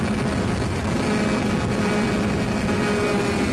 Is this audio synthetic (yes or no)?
no